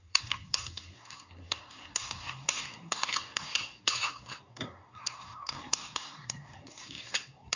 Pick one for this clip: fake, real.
fake